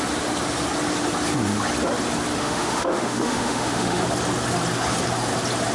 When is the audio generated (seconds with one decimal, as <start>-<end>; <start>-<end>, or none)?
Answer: 2.4-4.0